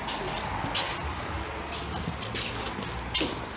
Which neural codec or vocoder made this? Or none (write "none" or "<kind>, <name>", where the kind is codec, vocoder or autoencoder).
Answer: none